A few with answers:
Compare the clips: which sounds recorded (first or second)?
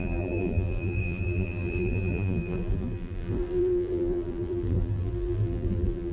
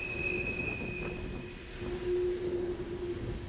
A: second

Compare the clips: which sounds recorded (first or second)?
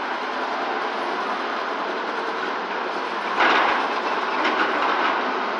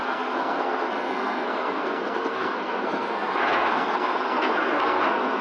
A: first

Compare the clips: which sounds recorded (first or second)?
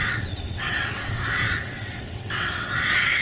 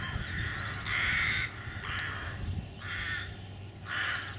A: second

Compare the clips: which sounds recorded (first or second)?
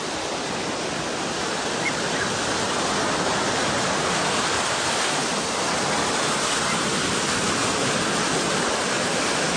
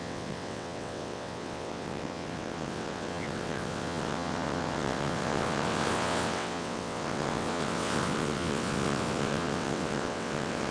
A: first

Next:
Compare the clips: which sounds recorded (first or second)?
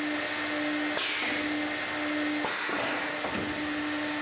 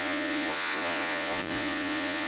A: first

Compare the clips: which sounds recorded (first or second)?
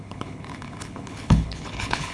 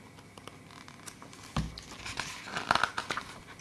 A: second